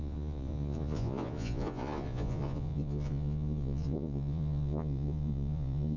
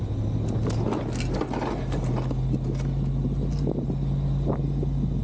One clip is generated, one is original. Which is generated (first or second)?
first